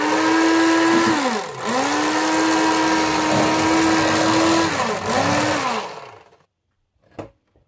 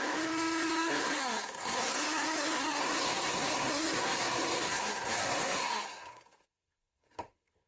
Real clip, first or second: first